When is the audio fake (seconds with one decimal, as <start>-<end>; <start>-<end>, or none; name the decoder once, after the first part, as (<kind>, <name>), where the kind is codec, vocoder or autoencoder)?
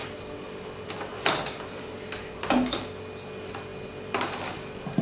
none